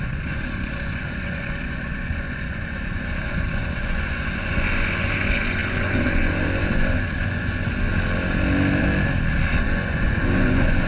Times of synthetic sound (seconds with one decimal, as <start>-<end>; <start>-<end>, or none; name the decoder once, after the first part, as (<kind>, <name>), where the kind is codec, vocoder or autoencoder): 0.0-7.9 (vocoder, Vocos); 9.6-10.9

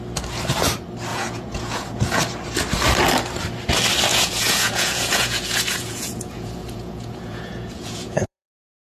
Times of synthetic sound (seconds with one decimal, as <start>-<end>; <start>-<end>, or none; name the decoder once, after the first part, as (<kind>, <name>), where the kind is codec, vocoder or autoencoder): 1.1-2.2 (vocoder, Vocos); 4.1-9.0

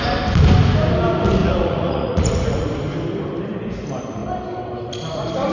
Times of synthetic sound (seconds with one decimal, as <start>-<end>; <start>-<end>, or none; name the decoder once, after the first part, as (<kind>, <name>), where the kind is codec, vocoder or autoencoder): 1.4-2.7 (vocoder, Vocos)

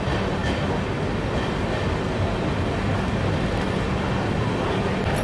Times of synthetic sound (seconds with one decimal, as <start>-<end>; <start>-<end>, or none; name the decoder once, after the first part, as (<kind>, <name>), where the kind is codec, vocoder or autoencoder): none

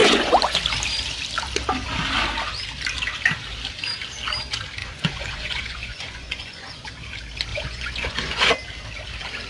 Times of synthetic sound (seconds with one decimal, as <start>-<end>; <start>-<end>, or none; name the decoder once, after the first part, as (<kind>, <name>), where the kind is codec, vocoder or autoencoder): 0.0-0.6 (vocoder, Vocos); 4.8-6.9; 7.5-8.5

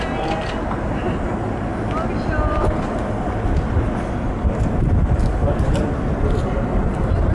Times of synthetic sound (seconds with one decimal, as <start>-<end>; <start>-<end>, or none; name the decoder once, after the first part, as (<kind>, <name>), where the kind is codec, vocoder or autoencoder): none

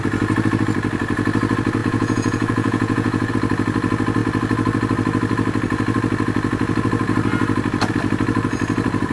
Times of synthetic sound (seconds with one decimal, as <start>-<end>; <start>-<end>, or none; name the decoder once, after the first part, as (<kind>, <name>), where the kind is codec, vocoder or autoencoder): 1.8-3.3 (vocoder, Vocos)

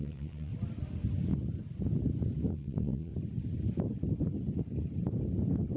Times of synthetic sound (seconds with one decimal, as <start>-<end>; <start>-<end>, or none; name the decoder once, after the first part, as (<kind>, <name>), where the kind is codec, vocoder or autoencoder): 0.0-0.5 (vocoder, Vocos); 2.5-3.1